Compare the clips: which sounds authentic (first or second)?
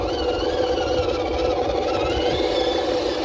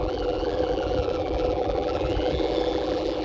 first